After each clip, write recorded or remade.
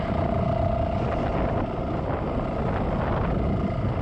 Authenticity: recorded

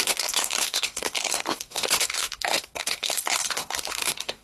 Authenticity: remade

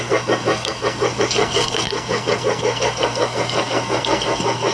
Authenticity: remade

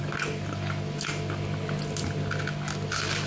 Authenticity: recorded